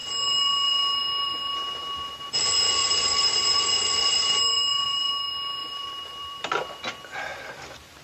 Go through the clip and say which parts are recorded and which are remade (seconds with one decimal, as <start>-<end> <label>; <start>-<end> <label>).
0.0-2.8 recorded; 2.8-5.1 remade; 5.1-5.6 recorded; 5.6-6.8 remade; 6.8-8.0 recorded